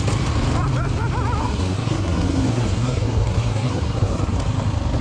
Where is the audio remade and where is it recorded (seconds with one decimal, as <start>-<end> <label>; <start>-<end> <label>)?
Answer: 0.0-1.4 recorded; 1.4-4.4 remade; 4.4-5.0 recorded